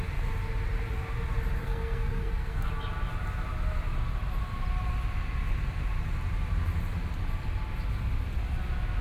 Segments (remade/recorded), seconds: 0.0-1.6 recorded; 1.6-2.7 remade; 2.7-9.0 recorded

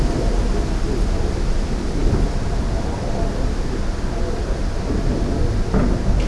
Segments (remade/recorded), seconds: 0.0-6.3 recorded

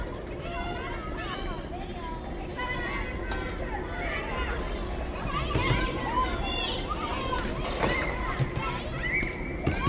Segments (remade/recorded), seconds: 0.0-9.9 recorded

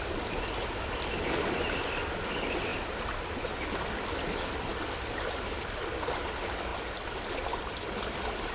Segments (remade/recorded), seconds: 0.0-8.5 recorded

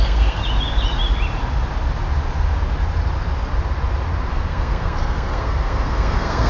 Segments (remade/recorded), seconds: 0.0-0.4 remade; 0.4-4.3 recorded; 4.3-6.5 remade

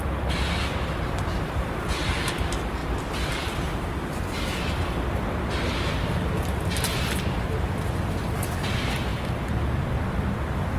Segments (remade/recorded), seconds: 0.0-10.8 recorded

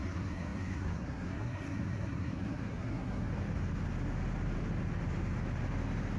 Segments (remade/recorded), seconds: 0.0-3.3 remade; 3.3-6.2 recorded